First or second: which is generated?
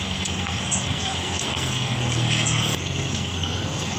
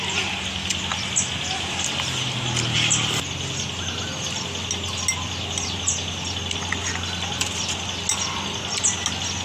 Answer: first